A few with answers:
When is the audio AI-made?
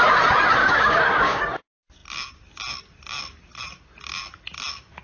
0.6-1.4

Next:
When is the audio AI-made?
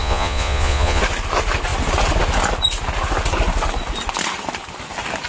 0.0-1.0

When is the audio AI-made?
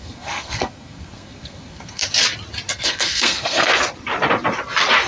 0.0-2.0; 2.7-3.7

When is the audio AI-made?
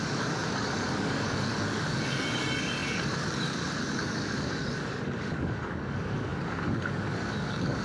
0.0-7.8